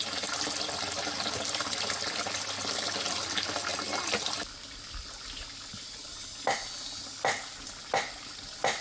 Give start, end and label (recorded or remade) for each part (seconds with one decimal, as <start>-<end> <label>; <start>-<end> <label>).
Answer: 0.0-8.8 recorded